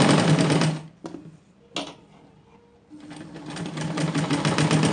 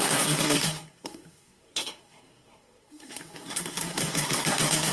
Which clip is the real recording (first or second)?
first